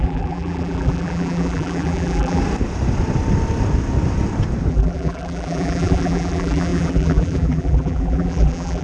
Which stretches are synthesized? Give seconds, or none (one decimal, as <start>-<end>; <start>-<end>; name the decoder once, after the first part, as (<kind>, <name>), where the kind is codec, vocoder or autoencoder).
0.0-2.4 (vocoder, BigVGAN v2); 4.7-8.8